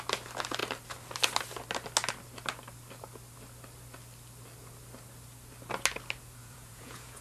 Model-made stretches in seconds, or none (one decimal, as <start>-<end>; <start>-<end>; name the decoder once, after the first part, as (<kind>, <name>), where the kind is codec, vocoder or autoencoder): 6.4-7.2 (vocoder, Vocos)